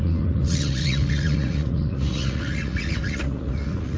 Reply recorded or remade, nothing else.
remade